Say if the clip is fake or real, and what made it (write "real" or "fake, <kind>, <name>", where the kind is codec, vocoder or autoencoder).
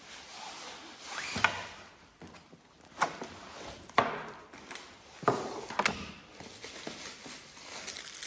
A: real